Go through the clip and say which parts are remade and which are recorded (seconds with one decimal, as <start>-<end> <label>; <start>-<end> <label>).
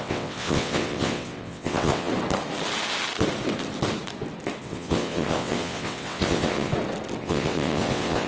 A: 0.0-2.1 remade; 2.1-4.6 recorded; 4.6-6.7 remade; 6.7-7.2 recorded; 7.2-8.3 remade